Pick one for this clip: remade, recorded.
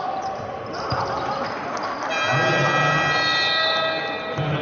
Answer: recorded